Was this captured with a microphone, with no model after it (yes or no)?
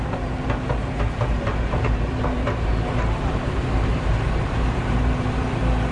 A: no